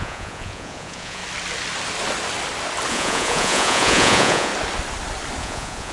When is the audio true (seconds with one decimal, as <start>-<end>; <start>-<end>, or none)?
1.2-2.9; 4.5-5.4